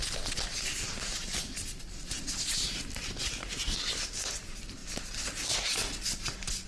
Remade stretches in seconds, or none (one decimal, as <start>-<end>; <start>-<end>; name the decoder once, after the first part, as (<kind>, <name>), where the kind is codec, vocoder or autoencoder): none